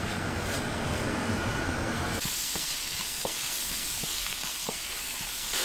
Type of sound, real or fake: fake